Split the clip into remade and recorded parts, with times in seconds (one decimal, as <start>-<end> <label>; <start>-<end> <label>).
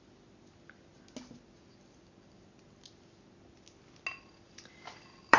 0.0-0.9 remade; 0.9-4.1 recorded; 4.1-5.4 remade